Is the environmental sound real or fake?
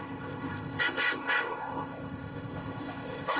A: fake